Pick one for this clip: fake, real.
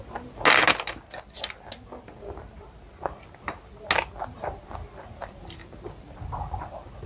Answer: real